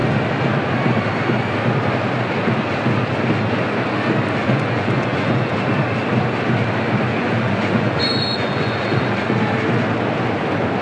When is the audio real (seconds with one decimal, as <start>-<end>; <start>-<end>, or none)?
0.0-4.4; 5.5-7.1; 9.0-10.8